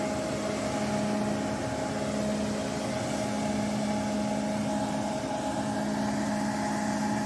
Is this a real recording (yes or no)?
yes